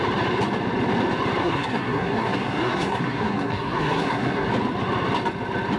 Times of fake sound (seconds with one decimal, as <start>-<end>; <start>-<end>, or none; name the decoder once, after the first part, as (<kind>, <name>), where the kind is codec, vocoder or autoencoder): 1.4-4.5 (codec, SNAC)